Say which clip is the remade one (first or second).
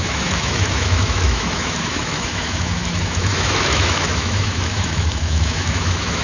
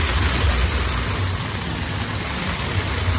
first